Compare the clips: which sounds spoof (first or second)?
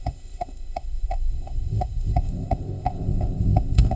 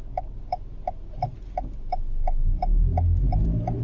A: first